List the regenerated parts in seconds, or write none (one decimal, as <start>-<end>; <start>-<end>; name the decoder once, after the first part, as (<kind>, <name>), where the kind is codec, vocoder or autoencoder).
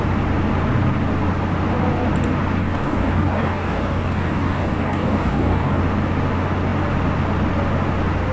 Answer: 2.6-5.8 (codec, DAC)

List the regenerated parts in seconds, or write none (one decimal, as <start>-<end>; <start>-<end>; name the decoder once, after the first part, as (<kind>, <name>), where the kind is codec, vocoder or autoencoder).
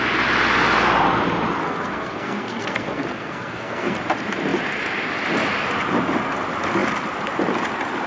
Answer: 1.6-4.0 (codec, SNAC)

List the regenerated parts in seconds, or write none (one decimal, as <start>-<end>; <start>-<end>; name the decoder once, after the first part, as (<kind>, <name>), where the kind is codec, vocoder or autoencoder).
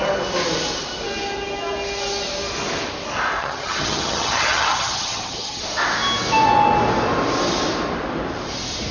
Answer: 3.4-5.6 (vocoder, HiFi-GAN)